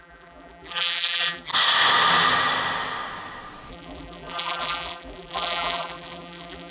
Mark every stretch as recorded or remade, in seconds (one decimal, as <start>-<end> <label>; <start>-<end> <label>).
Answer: 0.0-1.5 remade; 1.5-3.7 recorded; 3.7-6.7 remade